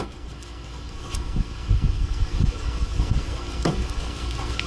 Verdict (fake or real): fake